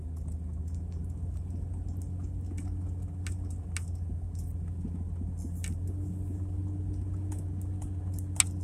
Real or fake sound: real